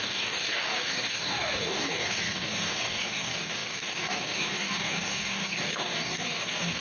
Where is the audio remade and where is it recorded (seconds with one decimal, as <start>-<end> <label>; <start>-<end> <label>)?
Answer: 0.0-6.8 remade